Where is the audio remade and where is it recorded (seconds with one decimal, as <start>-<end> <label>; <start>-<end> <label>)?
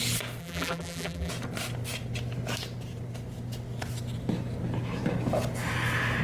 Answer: 0.0-0.4 recorded; 0.4-1.3 remade; 1.3-6.2 recorded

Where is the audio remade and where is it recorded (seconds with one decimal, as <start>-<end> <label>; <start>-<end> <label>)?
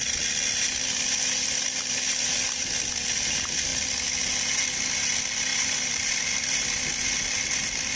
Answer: 0.0-8.0 recorded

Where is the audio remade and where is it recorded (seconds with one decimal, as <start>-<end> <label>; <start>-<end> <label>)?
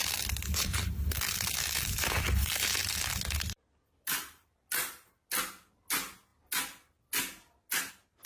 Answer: 0.0-8.3 recorded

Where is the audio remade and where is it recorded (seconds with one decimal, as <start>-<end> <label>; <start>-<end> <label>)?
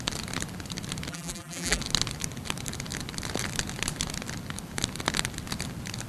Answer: 0.0-1.1 recorded; 1.1-1.8 remade; 1.8-6.1 recorded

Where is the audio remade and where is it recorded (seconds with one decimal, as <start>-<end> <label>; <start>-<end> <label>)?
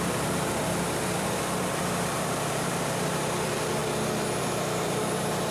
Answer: 0.0-3.8 remade; 3.8-4.4 recorded; 4.4-5.5 remade